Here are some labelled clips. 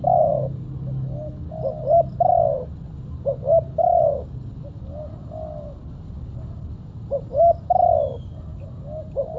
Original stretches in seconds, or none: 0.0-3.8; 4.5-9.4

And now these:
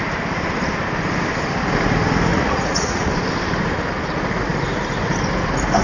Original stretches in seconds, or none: 0.0-2.3; 3.1-5.8

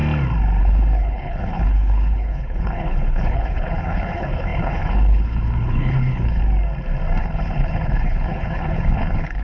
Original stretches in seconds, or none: 0.0-0.6; 6.4-7.2